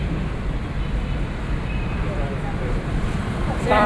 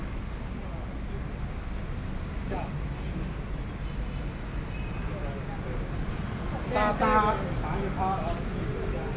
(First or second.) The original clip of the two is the second